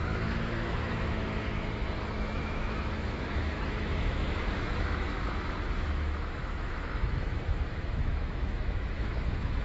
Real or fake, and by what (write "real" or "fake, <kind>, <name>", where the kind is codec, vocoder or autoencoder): fake, autoencoder, DAC-VAE